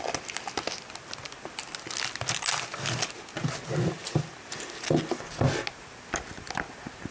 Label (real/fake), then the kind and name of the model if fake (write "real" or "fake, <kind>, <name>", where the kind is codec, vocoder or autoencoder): real